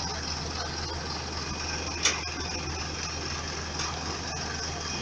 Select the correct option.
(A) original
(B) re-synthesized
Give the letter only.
A